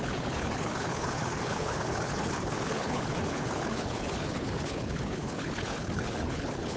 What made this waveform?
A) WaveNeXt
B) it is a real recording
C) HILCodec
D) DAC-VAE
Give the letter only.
C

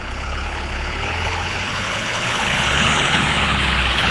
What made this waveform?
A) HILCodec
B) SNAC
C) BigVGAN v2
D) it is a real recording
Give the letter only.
A